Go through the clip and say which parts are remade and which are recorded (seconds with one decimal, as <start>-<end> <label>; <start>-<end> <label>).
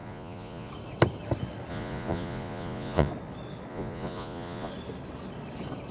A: 0.0-0.7 remade; 0.7-1.7 recorded; 1.7-3.1 remade; 3.1-3.7 recorded; 3.7-4.7 remade; 4.7-5.9 recorded